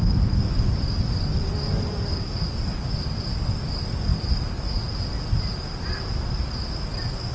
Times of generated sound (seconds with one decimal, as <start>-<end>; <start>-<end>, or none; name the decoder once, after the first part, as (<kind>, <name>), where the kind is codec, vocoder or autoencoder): none